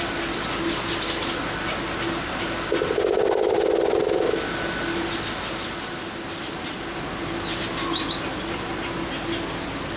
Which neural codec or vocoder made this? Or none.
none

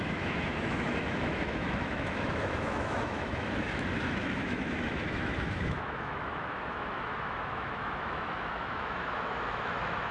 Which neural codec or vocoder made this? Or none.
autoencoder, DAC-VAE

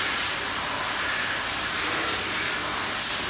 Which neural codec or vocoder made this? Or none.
none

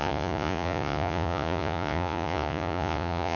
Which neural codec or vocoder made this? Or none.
vocoder, Vocos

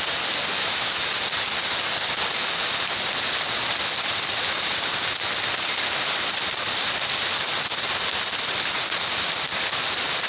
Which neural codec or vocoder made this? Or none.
none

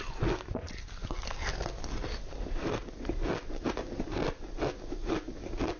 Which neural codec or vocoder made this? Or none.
none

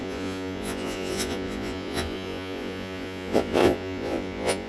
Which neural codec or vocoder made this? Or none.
vocoder, Vocos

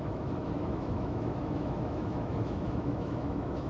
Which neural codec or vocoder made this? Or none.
autoencoder, DAC-VAE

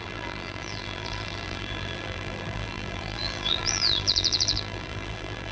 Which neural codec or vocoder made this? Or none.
vocoder, BigVGAN v2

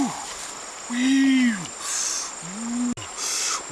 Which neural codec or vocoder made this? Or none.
none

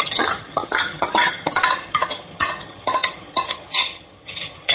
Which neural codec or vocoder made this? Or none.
vocoder, HiFi-GAN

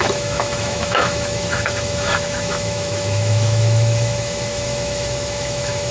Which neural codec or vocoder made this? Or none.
autoencoder, DAC-VAE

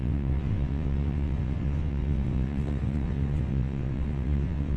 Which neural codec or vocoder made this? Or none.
vocoder, WaveNeXt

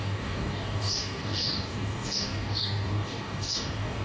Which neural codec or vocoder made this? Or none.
codec, DAC